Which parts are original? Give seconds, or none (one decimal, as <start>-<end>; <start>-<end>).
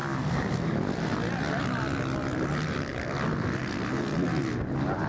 0.0-5.1